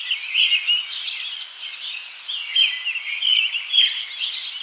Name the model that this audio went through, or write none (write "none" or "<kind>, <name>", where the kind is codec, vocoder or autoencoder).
none